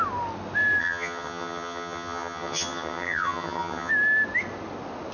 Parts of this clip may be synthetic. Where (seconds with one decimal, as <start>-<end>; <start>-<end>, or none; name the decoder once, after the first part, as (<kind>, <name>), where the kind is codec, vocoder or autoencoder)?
0.8-3.9 (vocoder, HiFi-GAN)